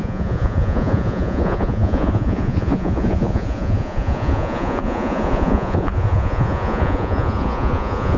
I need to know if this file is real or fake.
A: fake